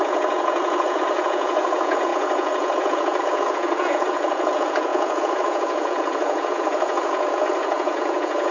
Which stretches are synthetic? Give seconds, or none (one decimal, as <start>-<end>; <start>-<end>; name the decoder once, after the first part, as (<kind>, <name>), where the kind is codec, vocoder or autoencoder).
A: 0.0-8.5 (vocoder, Vocos)